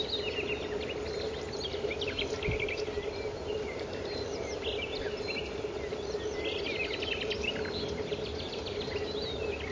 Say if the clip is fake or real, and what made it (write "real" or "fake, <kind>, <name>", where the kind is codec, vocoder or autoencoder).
real